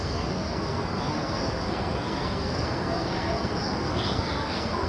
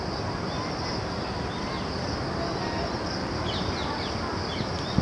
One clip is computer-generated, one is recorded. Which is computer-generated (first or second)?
first